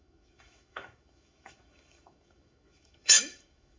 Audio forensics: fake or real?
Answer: fake